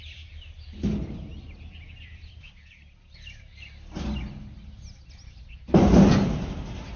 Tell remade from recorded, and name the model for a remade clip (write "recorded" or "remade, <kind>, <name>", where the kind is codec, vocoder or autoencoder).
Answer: recorded